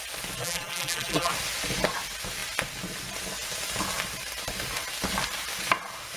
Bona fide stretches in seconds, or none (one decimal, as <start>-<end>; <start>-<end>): 0.0-0.4; 1.3-6.2